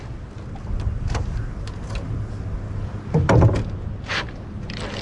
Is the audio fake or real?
real